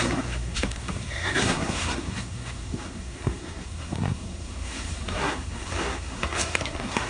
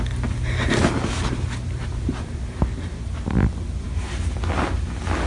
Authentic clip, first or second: second